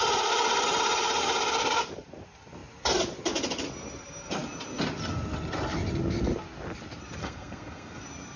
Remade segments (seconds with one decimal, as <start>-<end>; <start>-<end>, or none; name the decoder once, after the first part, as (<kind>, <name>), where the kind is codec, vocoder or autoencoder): 7.2-8.0 (codec, SNAC)